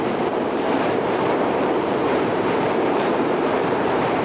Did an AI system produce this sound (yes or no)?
yes